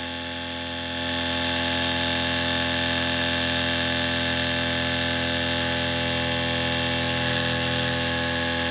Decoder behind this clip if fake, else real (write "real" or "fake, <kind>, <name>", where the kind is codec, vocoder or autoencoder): real